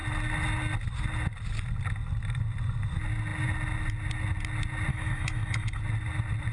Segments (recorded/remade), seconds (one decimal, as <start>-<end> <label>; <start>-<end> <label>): 0.0-4.9 recorded; 4.9-5.8 remade; 5.8-6.5 recorded